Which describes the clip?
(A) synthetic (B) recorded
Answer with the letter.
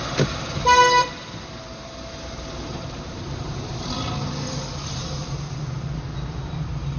B